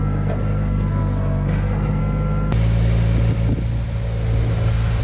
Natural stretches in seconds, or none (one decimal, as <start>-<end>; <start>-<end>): 2.0-5.0